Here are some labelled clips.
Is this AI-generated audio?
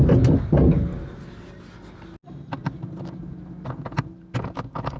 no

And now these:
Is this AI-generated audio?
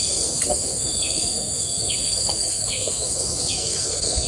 yes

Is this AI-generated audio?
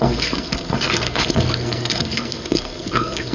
yes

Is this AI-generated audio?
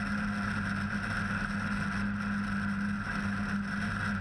no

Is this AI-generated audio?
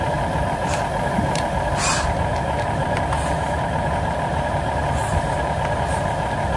no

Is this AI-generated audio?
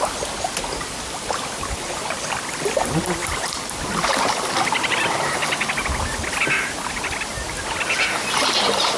no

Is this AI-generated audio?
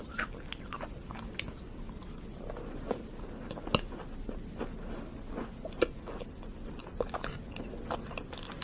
no